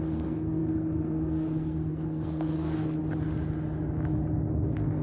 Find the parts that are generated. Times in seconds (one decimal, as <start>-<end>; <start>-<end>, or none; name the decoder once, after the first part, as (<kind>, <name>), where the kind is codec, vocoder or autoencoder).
0.0-3.0 (codec, SNAC); 4.5-5.0